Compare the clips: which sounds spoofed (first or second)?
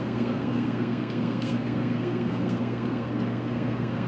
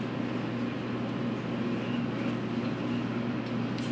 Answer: first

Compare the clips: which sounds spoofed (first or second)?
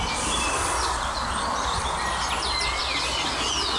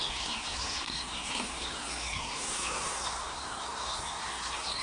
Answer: second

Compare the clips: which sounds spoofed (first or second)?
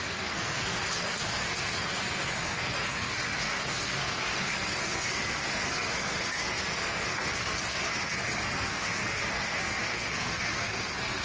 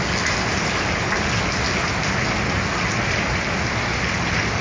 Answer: first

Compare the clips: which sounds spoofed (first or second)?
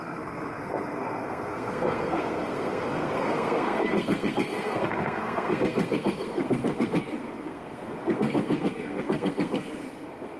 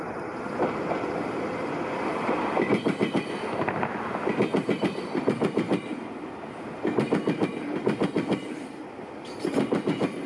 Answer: first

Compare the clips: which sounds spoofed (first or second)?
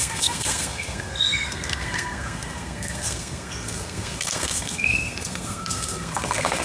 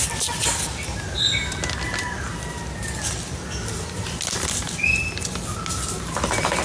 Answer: first